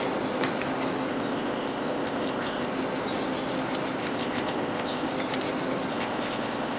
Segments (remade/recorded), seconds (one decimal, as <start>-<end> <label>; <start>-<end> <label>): 0.0-1.1 recorded; 1.1-2.7 remade; 2.7-4.0 recorded; 4.0-5.1 remade; 5.1-5.9 recorded; 5.9-6.8 remade